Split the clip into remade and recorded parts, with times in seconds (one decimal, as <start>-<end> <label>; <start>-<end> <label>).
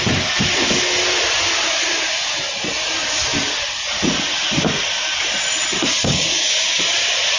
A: 0.0-6.0 recorded; 6.0-6.8 remade; 6.8-7.4 recorded